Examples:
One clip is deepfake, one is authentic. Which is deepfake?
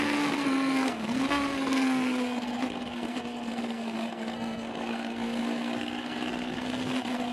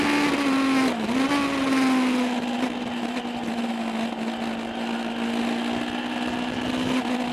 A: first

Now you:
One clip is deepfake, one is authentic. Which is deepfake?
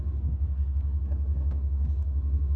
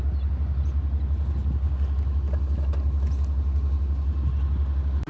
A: first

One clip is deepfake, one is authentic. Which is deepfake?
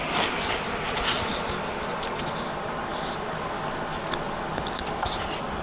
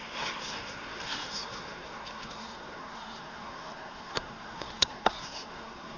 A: second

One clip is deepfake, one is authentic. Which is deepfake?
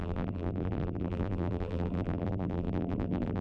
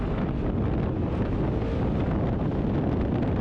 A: first